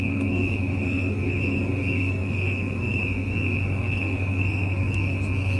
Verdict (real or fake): fake